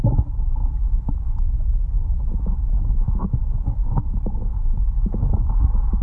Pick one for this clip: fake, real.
real